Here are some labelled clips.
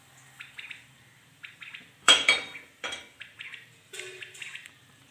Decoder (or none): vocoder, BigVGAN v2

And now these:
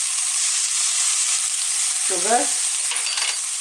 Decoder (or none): vocoder, BigVGAN v2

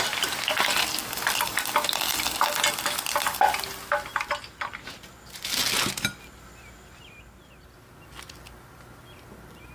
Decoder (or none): none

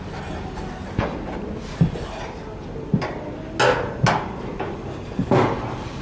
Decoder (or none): none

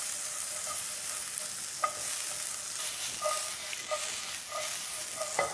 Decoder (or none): none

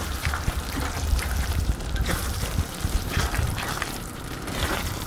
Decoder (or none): vocoder, BigVGAN v2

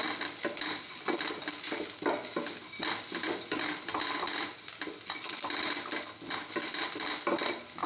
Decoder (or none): none